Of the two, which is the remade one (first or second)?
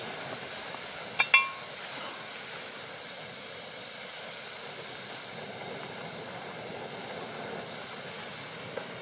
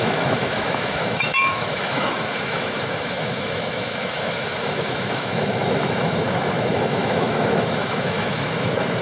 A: second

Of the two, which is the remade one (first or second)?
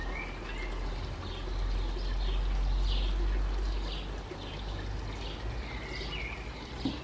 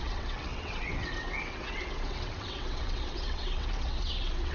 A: second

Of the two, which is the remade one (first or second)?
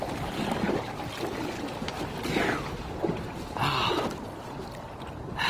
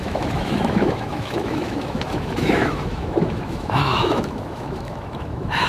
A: second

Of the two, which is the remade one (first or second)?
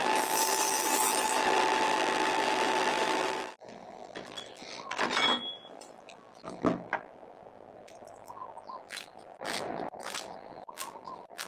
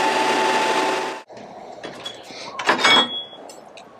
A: first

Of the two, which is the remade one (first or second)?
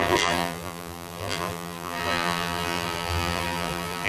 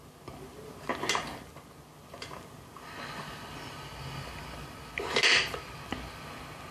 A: first